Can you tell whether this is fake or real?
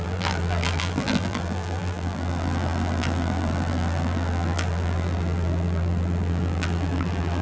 fake